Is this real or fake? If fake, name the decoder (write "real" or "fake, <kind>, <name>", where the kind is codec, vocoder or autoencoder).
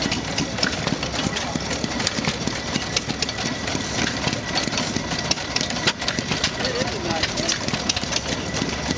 real